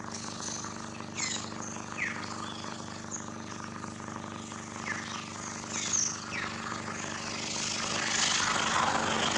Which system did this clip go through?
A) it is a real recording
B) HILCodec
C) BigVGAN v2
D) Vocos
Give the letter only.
A